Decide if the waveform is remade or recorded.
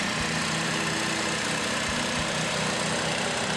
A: recorded